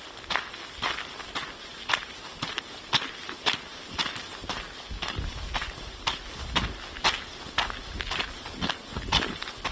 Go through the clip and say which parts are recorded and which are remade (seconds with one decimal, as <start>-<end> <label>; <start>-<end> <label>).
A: 0.0-9.7 recorded